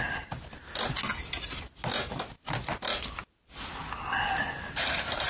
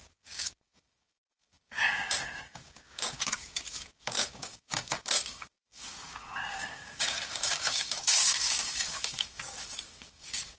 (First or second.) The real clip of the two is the first